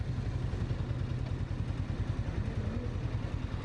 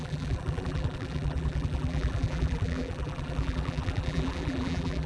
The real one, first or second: first